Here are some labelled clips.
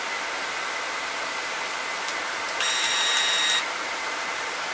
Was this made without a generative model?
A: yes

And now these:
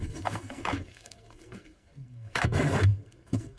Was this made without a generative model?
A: no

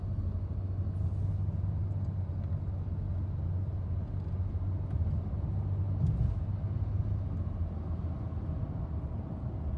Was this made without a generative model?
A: yes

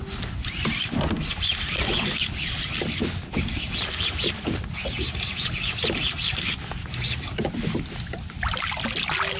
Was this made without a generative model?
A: yes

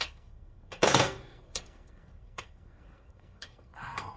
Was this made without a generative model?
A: no